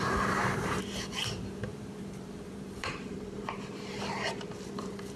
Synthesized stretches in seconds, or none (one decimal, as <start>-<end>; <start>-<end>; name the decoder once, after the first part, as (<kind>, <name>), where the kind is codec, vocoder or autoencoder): 0.0-5.2 (vocoder, BigVGAN v2)

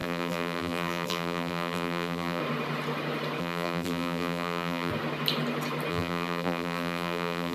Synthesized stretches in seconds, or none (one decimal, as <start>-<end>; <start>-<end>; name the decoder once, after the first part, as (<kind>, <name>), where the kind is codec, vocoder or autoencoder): 0.0-2.4 (vocoder, BigVGAN v2); 3.4-4.9; 5.9-7.5

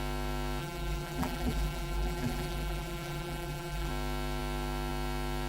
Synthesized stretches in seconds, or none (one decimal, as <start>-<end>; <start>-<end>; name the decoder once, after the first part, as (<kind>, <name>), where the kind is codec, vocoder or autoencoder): 0.6-3.9 (vocoder, BigVGAN v2)

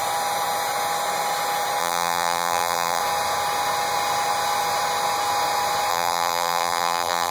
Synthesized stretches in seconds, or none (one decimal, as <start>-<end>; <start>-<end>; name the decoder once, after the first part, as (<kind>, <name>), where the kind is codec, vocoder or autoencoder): 1.8-3.0 (vocoder, BigVGAN v2); 5.9-7.3

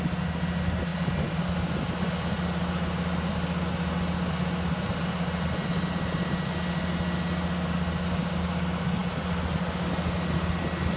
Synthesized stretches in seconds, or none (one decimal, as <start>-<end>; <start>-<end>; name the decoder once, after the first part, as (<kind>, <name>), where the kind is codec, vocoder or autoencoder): none

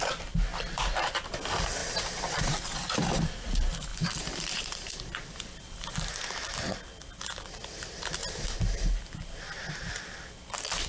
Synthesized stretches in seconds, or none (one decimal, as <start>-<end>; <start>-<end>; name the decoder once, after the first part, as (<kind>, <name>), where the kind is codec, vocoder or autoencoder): 0.5-1.1 (vocoder, BigVGAN v2); 1.8-3.4; 3.9-5.4; 8.2-10.4

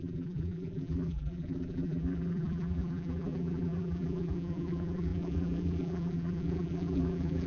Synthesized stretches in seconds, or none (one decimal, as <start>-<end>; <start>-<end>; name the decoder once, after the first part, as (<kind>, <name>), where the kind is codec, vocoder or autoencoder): 0.0-7.5 (vocoder, BigVGAN v2)